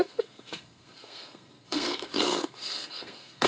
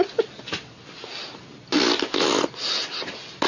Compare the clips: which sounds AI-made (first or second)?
first